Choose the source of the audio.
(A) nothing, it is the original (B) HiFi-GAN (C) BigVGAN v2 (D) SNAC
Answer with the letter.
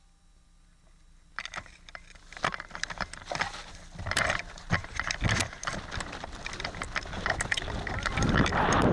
C